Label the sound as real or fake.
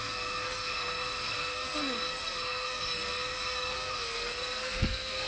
fake